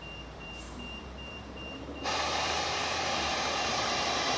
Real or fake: fake